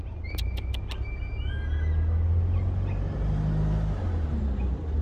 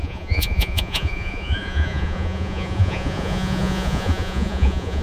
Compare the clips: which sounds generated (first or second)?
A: second